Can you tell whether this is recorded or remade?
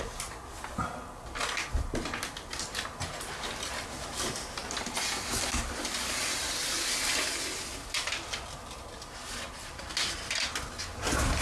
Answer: recorded